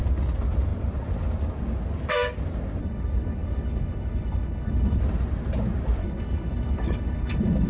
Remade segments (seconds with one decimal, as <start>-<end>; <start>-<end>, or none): 2.8-5.0; 6.0-7.7